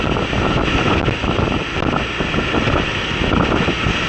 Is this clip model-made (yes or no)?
no